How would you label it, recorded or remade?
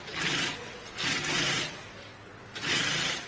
recorded